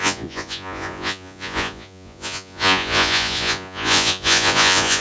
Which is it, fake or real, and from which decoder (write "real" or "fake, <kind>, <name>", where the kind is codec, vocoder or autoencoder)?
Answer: fake, vocoder, Vocos